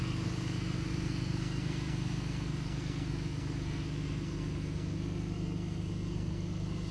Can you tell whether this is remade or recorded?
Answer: remade